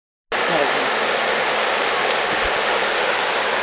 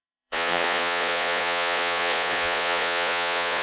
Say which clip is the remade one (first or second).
second